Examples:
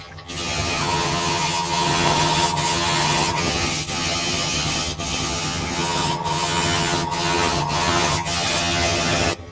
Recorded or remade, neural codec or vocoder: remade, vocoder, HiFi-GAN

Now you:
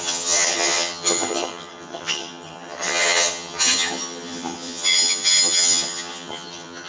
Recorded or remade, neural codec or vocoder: remade, vocoder, HiFi-GAN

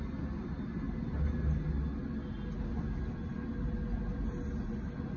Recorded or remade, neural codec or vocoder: recorded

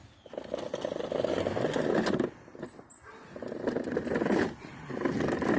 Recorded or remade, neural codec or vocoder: recorded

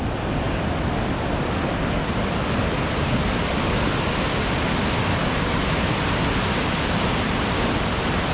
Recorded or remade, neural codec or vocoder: recorded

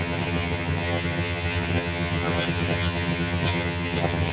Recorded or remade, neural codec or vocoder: remade, vocoder, HiFi-GAN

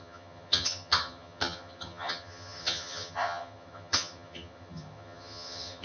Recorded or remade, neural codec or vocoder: remade, vocoder, HiFi-GAN